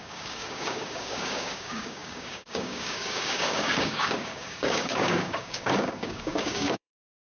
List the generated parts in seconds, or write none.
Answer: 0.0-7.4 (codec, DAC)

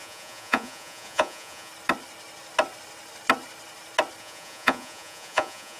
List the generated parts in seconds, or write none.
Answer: 0.0-1.7 (vocoder, Vocos); 4.2-5.8

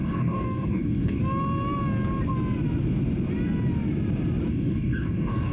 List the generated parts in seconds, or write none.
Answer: 0.0-1.2 (codec, DAC); 4.5-5.5

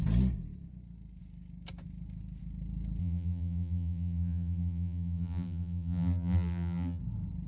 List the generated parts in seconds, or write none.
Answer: 3.0-7.0 (vocoder, BigVGAN v2)

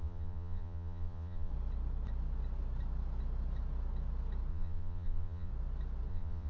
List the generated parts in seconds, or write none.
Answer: 0.0-1.5 (vocoder, Vocos); 4.5-5.5; 6.1-6.5